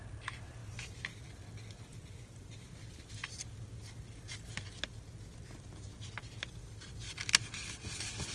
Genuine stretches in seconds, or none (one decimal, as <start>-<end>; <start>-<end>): 0.0-1.9; 2.5-8.3